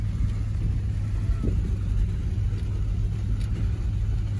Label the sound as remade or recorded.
recorded